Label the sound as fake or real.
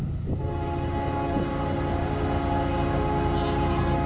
real